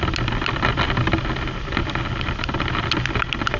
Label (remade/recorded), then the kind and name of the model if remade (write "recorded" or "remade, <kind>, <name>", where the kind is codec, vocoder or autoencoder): recorded